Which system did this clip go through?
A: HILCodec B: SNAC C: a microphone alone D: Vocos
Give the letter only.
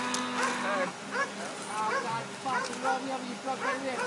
C